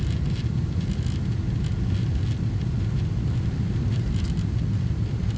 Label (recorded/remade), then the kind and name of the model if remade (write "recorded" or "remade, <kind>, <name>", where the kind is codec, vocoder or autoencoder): remade, vocoder, BigVGAN v2